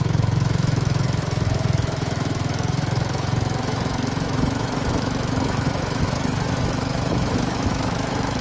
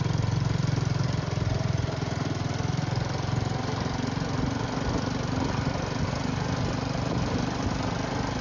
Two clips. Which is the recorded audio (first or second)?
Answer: second